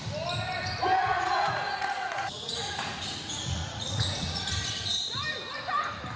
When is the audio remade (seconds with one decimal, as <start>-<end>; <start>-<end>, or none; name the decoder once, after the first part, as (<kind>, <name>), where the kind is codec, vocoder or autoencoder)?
1.0-4.5 (vocoder, Vocos)